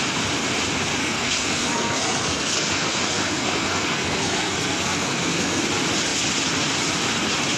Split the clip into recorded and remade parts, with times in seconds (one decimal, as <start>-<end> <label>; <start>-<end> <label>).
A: 0.0-1.0 recorded; 1.0-5.6 remade; 5.6-7.6 recorded